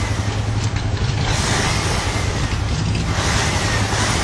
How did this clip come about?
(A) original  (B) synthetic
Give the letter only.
A